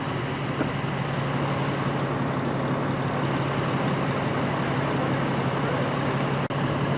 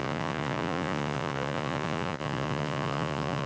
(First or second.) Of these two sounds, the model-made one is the second